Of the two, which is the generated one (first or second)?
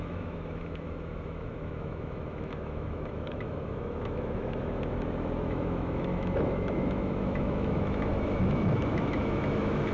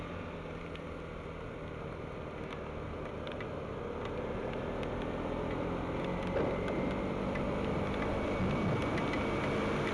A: first